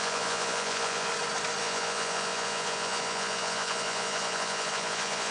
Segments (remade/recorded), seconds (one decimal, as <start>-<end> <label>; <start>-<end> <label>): 0.0-1.1 remade; 1.1-1.6 recorded; 1.6-5.3 remade